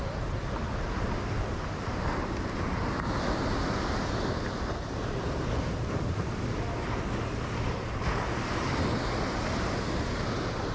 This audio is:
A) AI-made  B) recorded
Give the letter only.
B